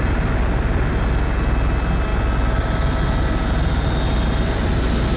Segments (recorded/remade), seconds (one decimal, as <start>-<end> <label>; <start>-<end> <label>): 0.0-5.2 recorded